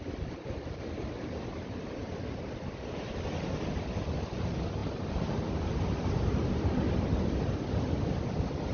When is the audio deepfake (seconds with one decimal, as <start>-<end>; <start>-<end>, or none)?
none